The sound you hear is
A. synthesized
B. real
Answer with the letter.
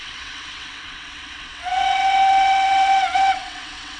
A